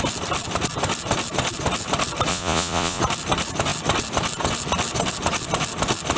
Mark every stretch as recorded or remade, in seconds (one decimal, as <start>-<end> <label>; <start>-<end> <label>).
0.0-2.3 recorded; 2.3-3.0 remade; 3.0-6.2 recorded